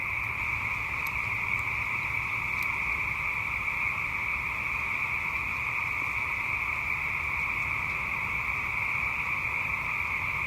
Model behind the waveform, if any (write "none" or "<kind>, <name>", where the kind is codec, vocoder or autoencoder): none